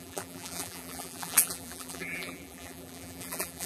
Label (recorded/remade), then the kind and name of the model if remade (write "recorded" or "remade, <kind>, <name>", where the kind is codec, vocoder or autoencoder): remade, vocoder, BigVGAN v2